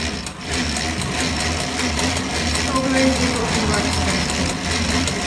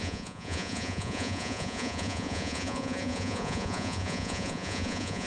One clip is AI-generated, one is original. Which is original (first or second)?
first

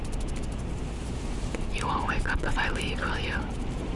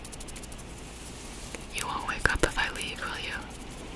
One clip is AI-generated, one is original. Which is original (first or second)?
second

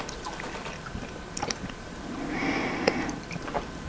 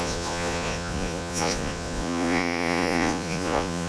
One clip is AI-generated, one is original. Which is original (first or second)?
first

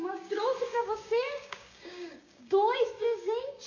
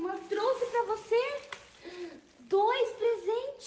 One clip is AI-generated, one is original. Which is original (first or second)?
second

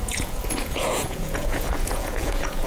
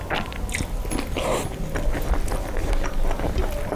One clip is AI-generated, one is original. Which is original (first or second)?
second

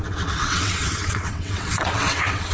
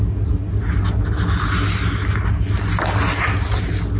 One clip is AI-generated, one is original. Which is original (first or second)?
second